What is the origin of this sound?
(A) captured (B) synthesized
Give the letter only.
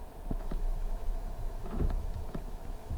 B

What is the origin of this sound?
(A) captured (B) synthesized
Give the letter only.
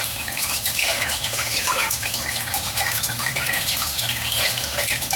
B